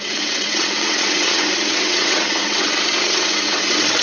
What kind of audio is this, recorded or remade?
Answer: remade